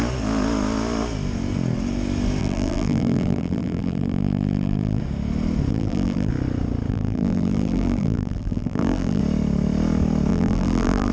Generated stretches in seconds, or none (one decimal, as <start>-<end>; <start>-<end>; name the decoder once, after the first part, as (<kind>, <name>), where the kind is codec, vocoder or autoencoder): 2.4-5.0 (vocoder, BigVGAN v2); 5.7-6.3; 6.9-9.2; 10.3-11.1